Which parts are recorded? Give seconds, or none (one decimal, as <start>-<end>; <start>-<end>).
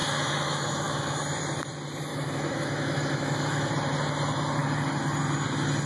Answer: 1.2-2.1; 3.7-5.9